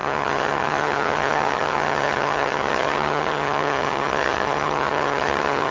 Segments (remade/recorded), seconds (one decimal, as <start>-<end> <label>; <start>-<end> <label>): 0.0-5.7 remade